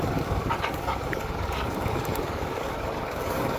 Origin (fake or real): fake